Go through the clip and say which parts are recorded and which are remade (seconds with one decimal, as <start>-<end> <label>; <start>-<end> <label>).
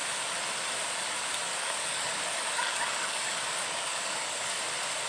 0.0-1.5 recorded; 1.5-4.6 remade; 4.6-5.1 recorded